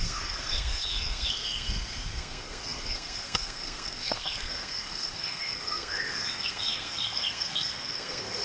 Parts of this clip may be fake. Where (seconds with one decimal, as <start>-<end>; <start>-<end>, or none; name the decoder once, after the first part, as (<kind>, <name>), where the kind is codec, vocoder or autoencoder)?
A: 0.0-8.4 (codec, SNAC)